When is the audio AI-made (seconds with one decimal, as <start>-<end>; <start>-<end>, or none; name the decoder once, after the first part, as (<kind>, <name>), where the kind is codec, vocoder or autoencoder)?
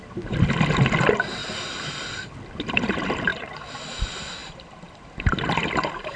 4.4-6.2 (vocoder, BigVGAN v2)